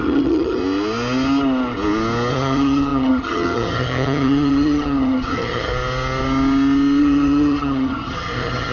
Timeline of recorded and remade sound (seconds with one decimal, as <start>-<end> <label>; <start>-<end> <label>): 0.0-0.6 remade; 0.6-2.3 recorded; 2.3-5.7 remade; 5.7-7.0 recorded; 7.0-8.7 remade